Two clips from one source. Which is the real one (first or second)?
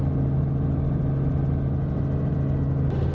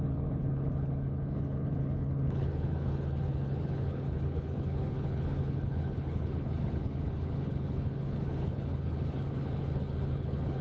first